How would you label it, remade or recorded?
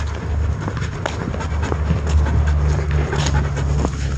recorded